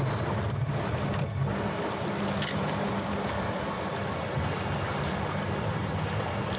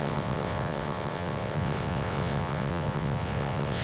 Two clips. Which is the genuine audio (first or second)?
first